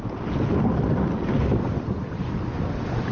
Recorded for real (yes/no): yes